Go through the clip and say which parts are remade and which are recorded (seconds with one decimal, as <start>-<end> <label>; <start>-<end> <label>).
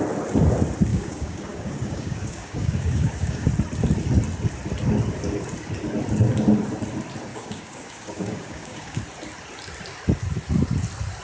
0.0-0.9 recorded; 0.9-3.5 remade; 3.5-7.3 recorded; 7.3-9.0 remade; 9.0-11.2 recorded